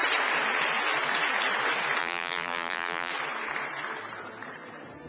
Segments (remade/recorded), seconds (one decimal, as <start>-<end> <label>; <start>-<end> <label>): 0.0-2.0 recorded; 2.0-3.1 remade; 3.1-5.1 recorded